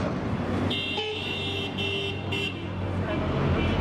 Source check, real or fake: real